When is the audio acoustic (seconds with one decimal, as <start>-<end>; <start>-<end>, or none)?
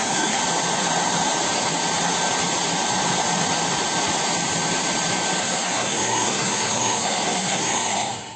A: 0.4-5.4